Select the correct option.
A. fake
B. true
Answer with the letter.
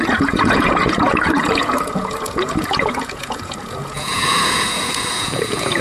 A